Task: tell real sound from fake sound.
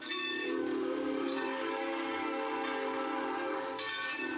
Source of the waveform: fake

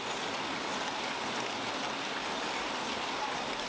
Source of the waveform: real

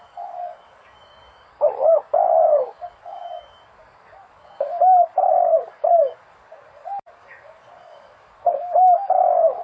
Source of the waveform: fake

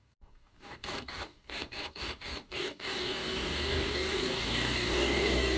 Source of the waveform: fake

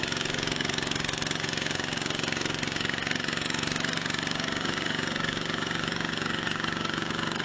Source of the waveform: fake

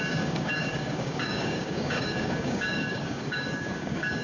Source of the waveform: fake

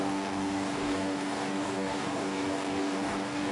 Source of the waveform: fake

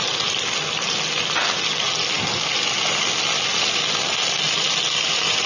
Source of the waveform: real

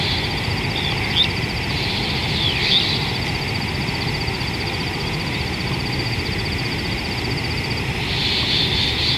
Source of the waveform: real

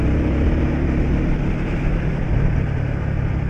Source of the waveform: real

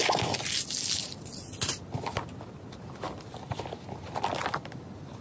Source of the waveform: real